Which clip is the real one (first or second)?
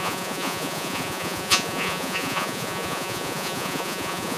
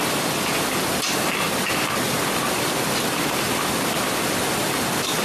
second